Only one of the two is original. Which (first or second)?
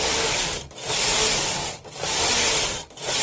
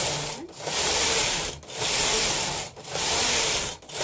first